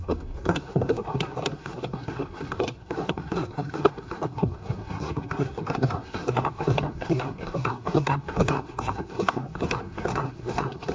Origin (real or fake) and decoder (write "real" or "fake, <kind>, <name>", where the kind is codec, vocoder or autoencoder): fake, codec, SNAC